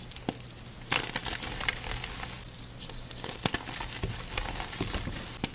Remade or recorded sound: recorded